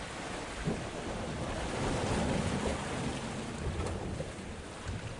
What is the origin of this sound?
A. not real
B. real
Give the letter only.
B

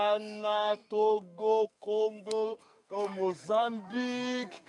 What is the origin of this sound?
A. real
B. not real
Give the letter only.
B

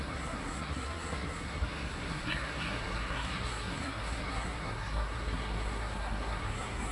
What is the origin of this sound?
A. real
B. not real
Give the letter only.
B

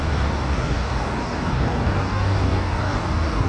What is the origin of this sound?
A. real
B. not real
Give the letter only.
B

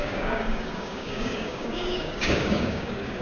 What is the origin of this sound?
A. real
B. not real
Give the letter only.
B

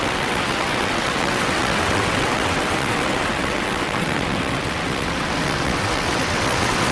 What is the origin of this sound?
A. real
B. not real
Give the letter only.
B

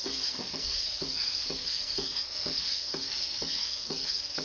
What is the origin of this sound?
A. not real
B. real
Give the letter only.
A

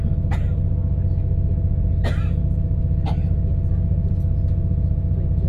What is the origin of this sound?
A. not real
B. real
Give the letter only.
B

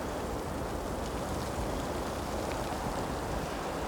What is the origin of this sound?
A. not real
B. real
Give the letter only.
B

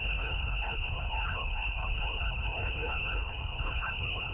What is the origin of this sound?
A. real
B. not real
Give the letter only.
B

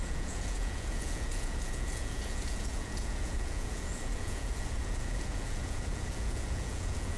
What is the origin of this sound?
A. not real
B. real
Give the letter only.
A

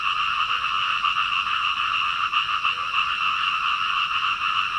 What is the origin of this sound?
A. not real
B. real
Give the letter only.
B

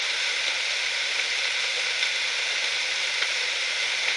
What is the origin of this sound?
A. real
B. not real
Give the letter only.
A